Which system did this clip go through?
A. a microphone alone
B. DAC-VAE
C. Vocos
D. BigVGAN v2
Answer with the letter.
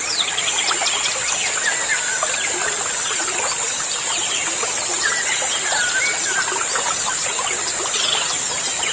A